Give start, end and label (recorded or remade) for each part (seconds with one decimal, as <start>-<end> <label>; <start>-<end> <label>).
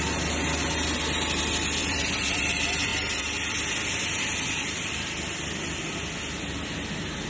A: 0.0-1.8 recorded; 1.8-2.4 remade; 2.4-2.9 recorded; 2.9-5.8 remade; 5.8-7.3 recorded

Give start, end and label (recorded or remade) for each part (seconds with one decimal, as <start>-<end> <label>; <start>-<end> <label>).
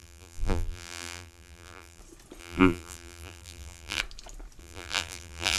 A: 0.0-2.0 remade; 2.0-2.4 recorded; 2.4-4.0 remade; 4.0-4.6 recorded; 4.6-5.6 remade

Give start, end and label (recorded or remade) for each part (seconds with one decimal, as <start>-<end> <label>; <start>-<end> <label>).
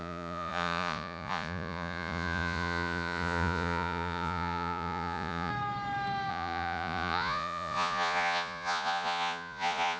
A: 0.0-5.5 remade; 5.5-6.3 recorded; 6.3-10.0 remade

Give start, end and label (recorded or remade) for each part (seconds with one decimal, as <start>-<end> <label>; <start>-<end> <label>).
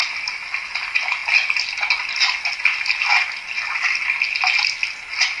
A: 0.0-5.4 recorded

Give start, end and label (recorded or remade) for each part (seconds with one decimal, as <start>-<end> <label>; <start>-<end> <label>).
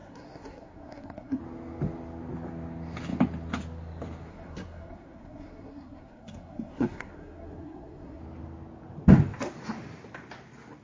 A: 0.0-1.4 remade; 1.4-4.3 recorded; 4.3-8.2 remade; 8.2-10.8 recorded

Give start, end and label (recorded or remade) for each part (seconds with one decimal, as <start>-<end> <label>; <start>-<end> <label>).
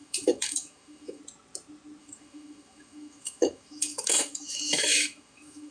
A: 0.0-1.2 remade; 1.2-2.0 recorded; 2.0-5.7 remade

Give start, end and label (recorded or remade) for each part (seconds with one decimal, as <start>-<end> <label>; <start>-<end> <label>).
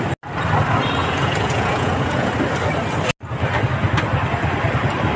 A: 0.0-1.0 recorded; 1.0-2.3 remade; 2.3-5.2 recorded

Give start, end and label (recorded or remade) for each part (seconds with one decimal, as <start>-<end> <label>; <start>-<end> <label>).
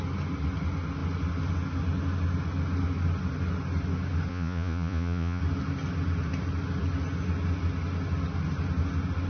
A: 0.0-4.3 recorded; 4.3-5.4 remade; 5.4-9.3 recorded